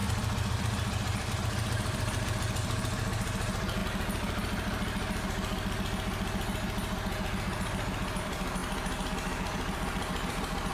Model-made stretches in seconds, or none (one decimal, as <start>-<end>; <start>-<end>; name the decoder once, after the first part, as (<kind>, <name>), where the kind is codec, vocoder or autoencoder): 0.0-3.8 (vocoder, BigVGAN v2); 8.2-10.7